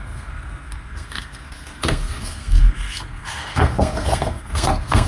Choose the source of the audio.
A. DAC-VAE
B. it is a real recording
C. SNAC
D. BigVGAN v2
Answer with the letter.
C